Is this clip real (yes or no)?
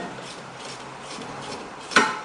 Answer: no